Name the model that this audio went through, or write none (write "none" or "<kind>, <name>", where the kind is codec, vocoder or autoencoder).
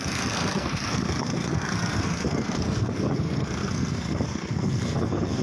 codec, SNAC